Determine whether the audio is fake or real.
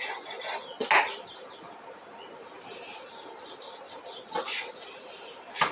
real